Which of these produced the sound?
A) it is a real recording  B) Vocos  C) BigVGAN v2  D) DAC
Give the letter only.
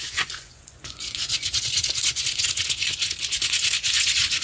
B